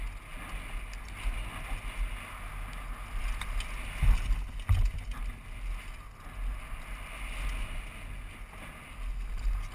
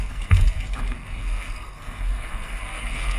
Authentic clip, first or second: first